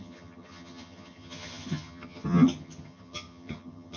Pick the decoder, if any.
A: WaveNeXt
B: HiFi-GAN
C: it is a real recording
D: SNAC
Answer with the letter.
B